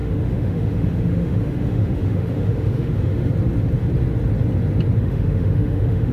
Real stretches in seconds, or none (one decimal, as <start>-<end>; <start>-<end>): 3.3-5.0